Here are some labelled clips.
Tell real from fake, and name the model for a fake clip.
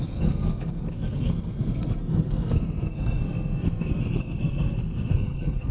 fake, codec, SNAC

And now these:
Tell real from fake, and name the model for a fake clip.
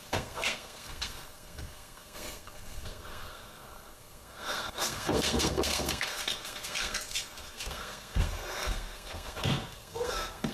fake, codec, SNAC